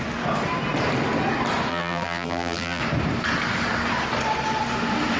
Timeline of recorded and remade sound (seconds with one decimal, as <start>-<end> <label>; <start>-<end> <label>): 0.0-1.7 recorded; 1.7-2.8 remade; 2.8-5.2 recorded